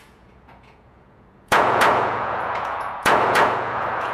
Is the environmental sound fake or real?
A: fake